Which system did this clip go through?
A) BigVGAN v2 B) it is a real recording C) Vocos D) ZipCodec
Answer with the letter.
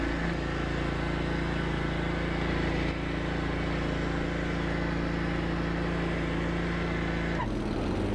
B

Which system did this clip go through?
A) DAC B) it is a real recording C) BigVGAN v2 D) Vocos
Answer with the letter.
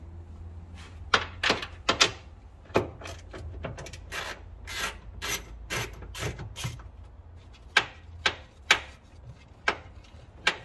B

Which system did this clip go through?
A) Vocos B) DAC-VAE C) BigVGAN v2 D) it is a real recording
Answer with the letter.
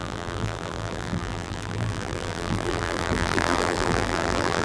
C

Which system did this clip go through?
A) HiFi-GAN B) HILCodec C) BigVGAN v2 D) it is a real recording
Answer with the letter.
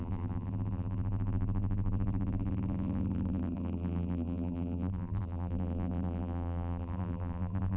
C